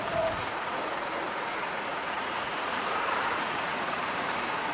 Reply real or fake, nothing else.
fake